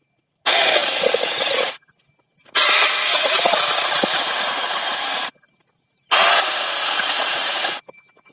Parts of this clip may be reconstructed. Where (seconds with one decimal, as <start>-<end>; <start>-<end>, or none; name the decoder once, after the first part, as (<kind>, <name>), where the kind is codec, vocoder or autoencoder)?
none